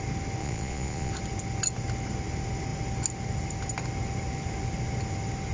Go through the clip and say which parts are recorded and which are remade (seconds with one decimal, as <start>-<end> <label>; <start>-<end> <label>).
0.0-0.4 recorded; 0.4-1.1 remade; 1.1-5.5 recorded